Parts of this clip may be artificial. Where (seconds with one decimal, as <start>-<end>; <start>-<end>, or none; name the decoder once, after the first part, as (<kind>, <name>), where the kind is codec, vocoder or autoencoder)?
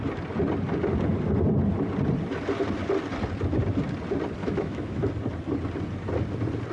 4.4-5.0 (autoencoder, DAC-VAE)